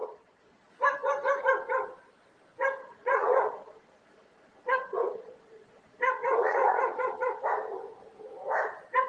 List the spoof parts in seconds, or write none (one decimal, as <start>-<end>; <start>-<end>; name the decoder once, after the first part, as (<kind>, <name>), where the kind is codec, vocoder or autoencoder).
0.0-0.7 (vocoder, Vocos); 2.8-7.5